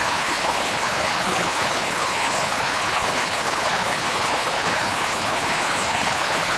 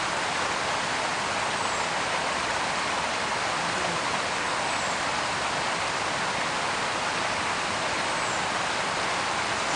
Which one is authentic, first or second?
second